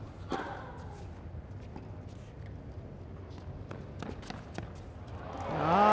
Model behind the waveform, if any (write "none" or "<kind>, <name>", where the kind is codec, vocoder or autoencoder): none